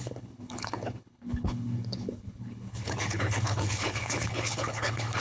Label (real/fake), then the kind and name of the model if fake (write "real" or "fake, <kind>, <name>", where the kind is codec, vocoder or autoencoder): fake, codec, HILCodec